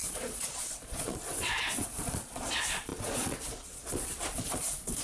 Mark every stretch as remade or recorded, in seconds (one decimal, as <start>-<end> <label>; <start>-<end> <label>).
0.0-5.0 remade